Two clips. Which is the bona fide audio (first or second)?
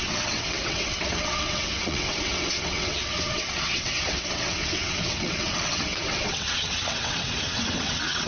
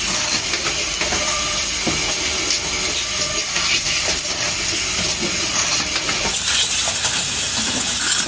second